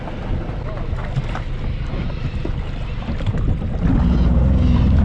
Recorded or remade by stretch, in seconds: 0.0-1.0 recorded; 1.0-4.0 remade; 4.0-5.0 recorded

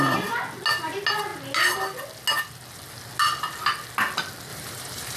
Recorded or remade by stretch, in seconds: 0.0-4.5 recorded; 4.5-5.2 remade

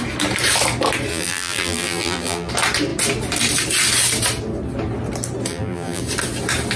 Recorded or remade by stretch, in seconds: 0.0-1.1 recorded; 1.1-2.5 remade; 2.5-5.5 recorded; 5.5-6.0 remade; 6.0-6.8 recorded

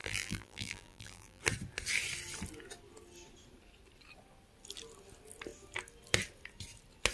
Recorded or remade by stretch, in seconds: 0.0-1.4 remade; 1.4-7.1 recorded

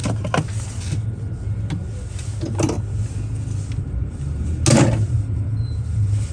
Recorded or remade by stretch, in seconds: 0.0-3.8 recorded; 3.8-4.5 remade; 4.5-5.1 recorded; 5.1-6.3 remade

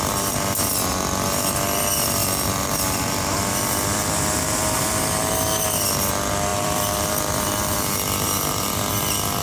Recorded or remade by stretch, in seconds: 0.0-2.2 recorded; 2.2-5.2 remade; 5.2-6.5 recorded; 6.5-8.9 remade; 8.9-9.4 recorded

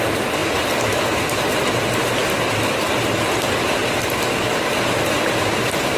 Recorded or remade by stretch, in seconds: 0.0-6.0 recorded

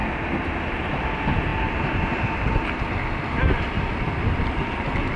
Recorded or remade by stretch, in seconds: 0.0-5.2 recorded